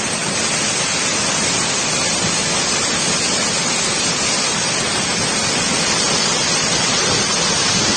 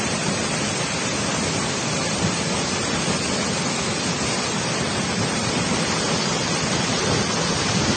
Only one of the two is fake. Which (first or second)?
second